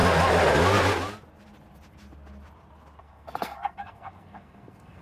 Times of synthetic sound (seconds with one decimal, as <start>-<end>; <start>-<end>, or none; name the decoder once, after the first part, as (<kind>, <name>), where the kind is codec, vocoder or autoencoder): 3.0-5.0 (codec, SNAC)